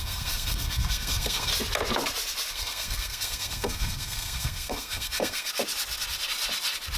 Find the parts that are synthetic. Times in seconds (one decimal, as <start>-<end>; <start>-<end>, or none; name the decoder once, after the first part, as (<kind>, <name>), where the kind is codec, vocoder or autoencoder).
0.0-1.5 (codec, SNAC); 2.5-5.5